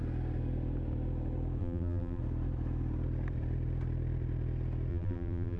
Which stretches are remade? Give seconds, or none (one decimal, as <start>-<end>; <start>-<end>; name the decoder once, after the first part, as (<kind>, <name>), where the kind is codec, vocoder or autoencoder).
1.6-2.2 (vocoder, BigVGAN v2); 4.9-5.6